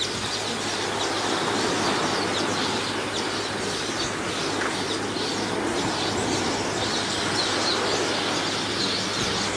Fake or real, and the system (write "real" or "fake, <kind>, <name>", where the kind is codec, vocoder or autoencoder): real